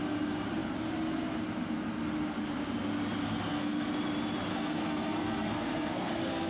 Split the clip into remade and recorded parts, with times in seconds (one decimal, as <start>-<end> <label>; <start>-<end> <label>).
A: 0.0-3.2 recorded; 3.2-3.9 remade; 3.9-4.5 recorded; 4.5-6.5 remade